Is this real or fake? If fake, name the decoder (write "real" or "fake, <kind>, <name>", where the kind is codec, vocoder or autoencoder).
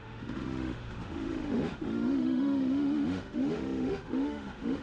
fake, autoencoder, DAC-VAE